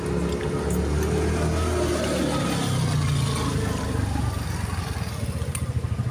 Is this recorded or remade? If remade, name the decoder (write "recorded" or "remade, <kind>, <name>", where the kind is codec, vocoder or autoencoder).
recorded